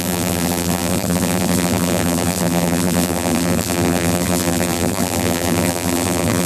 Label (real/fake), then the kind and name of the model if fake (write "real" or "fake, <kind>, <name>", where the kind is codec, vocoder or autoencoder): fake, vocoder, BigVGAN v2